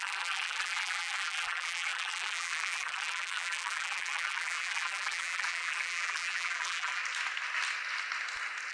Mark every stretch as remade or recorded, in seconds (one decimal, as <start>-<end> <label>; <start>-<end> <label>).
0.0-7.0 remade; 7.0-8.7 recorded